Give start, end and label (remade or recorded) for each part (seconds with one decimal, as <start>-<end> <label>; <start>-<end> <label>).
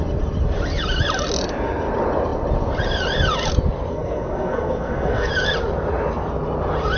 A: 0.0-3.9 recorded; 3.9-5.3 remade; 5.3-7.0 recorded